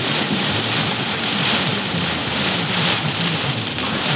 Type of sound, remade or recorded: remade